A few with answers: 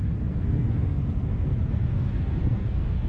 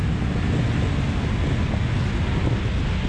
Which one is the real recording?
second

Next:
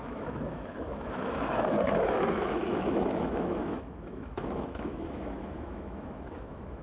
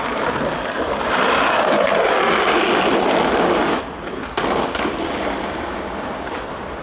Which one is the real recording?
second